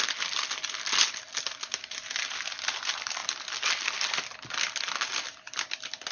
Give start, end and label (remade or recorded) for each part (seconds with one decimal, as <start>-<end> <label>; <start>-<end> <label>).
0.0-6.1 recorded